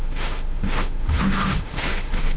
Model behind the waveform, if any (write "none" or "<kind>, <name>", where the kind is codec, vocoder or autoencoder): autoencoder, DAC-VAE